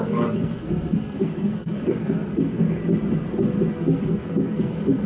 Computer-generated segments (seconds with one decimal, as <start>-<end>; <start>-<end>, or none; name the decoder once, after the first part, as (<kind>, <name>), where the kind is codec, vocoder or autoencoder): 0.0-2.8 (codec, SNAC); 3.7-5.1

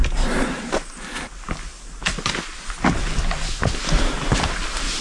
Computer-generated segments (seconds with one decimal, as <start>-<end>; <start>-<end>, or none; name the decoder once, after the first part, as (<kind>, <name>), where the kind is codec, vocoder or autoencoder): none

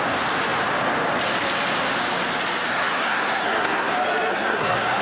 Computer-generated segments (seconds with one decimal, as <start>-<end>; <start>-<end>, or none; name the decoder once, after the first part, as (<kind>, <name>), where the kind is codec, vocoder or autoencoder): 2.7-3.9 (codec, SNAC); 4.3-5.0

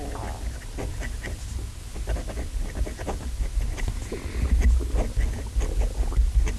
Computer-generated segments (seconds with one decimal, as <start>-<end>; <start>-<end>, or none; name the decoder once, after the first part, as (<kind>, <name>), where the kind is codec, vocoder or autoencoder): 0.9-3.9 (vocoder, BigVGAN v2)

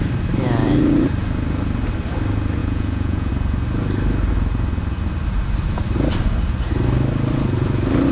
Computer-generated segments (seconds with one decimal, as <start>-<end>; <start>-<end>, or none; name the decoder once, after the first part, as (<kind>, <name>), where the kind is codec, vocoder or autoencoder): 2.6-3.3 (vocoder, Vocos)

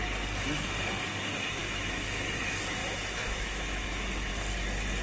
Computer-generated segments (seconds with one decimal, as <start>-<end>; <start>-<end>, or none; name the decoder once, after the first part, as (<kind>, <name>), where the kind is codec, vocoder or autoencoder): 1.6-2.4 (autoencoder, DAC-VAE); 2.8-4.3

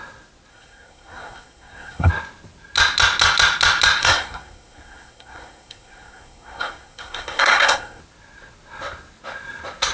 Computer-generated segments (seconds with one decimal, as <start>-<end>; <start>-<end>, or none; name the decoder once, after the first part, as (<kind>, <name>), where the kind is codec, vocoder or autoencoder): 0.5-2.1 (codec, SNAC); 4.0-8.0